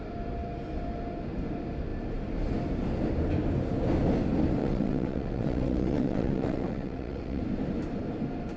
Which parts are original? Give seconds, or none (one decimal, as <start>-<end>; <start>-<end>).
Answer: 0.0-4.6; 7.4-8.6